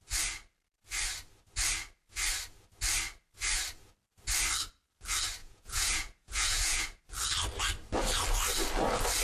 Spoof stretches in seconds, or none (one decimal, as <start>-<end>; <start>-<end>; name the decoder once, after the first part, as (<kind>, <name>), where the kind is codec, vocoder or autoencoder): 5.4-7.0 (vocoder, Vocos)